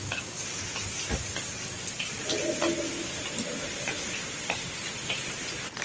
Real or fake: real